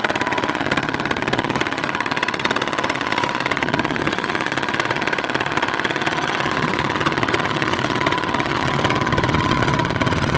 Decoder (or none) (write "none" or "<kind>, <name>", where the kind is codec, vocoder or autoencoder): vocoder, Vocos